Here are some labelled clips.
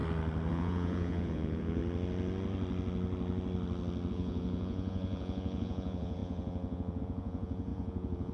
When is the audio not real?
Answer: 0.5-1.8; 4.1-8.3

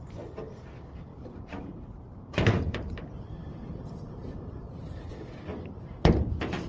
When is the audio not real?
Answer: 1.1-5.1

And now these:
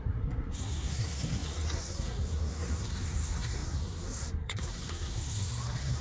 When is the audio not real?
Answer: 0.0-6.0

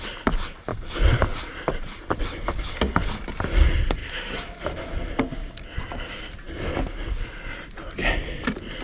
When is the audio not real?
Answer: 4.0-4.9

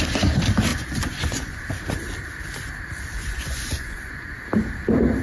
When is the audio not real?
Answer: 0.7-1.6; 3.2-4.4

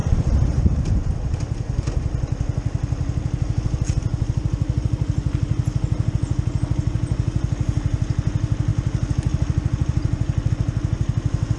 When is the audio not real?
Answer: 0.0-0.6

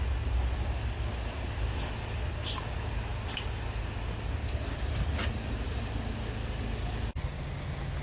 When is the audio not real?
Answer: none